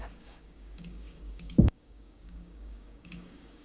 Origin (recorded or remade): remade